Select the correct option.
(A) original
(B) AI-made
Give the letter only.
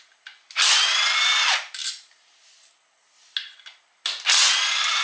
A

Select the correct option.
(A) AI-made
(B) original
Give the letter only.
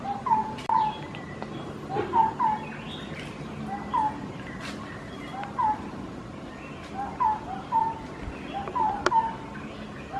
B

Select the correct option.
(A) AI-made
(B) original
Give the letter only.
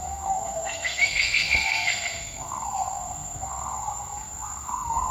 A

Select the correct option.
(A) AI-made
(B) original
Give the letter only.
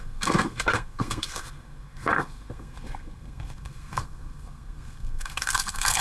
A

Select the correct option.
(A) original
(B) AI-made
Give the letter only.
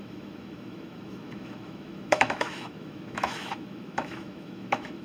B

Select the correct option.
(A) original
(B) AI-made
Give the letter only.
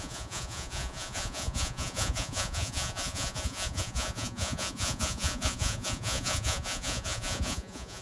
B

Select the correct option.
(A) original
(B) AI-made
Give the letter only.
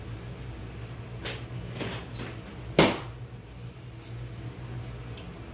A